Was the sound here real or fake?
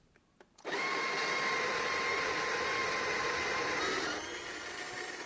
real